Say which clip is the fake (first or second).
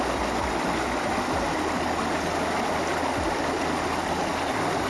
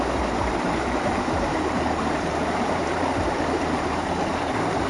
second